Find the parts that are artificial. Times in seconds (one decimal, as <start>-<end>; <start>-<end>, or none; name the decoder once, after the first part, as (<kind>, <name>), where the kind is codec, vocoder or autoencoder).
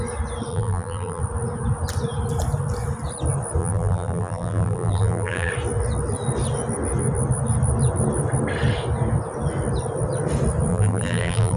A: 0.5-1.2 (vocoder, BigVGAN v2); 3.6-5.5; 10.7-11.6